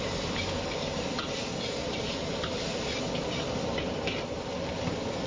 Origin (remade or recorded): remade